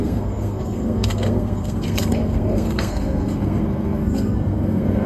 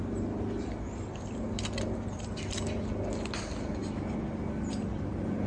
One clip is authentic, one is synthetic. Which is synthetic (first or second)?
first